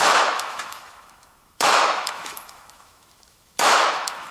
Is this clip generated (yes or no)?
yes